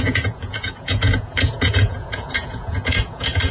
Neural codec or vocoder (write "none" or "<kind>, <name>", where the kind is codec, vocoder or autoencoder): vocoder, Vocos